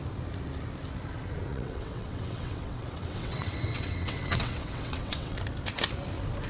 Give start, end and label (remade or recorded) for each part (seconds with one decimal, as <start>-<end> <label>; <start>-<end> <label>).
0.0-1.5 recorded; 1.5-5.4 remade; 5.4-6.5 recorded